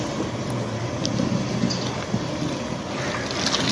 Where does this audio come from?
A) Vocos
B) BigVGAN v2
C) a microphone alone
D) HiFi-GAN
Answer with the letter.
C